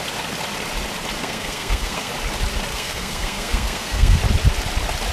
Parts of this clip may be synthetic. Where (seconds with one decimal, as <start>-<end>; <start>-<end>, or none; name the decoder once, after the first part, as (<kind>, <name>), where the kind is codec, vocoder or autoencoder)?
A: 1.2-2.1 (codec, SNAC); 2.7-4.2